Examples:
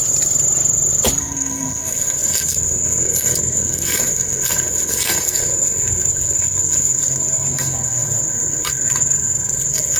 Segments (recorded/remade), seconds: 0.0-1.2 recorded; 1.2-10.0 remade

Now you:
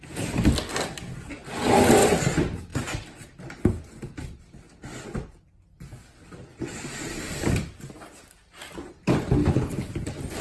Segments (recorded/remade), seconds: 0.0-9.4 recorded; 9.4-9.9 remade; 9.9-10.4 recorded

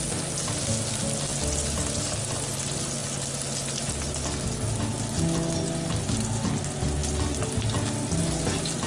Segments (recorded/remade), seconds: 0.0-8.9 recorded

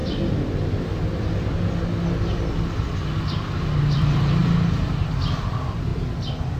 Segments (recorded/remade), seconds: 0.0-3.8 recorded; 3.8-5.9 remade; 5.9-6.6 recorded

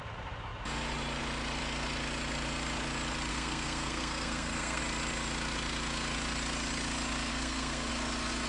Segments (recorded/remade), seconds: 0.0-3.3 recorded; 3.3-4.8 remade; 4.8-7.3 recorded; 7.3-7.9 remade; 7.9-8.5 recorded

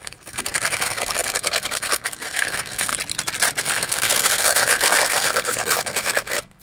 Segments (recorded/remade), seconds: 0.0-2.9 remade; 2.9-3.6 recorded; 3.6-6.6 remade